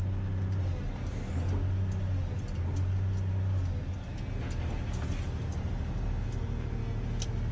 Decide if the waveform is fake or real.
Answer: real